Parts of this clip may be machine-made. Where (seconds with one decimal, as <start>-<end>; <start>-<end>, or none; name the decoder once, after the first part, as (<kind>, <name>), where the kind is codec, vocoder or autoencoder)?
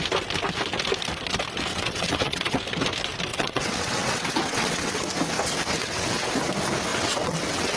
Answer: 1.7-2.6 (vocoder, WaveNeXt); 3.3-5.0; 5.8-6.3; 6.9-7.8